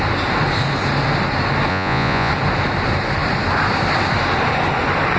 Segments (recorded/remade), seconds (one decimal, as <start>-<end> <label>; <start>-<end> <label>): 0.0-1.7 recorded; 1.7-2.3 remade; 2.3-5.2 recorded